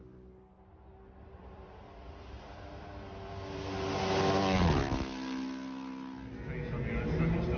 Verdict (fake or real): real